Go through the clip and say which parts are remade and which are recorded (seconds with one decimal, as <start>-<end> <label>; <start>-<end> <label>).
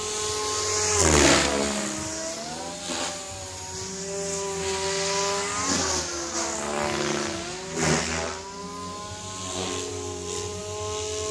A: 0.0-9.9 recorded; 9.9-10.6 remade; 10.6-11.3 recorded